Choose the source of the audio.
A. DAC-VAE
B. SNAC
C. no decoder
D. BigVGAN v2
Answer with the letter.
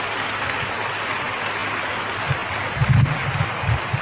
C